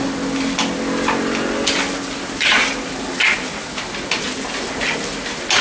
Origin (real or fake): real